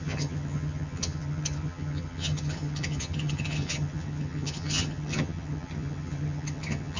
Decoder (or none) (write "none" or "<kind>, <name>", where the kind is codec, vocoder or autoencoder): vocoder, HiFi-GAN